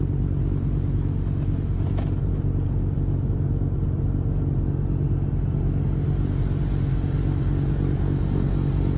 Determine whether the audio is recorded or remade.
recorded